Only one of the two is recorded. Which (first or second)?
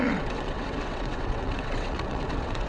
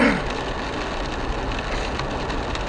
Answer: second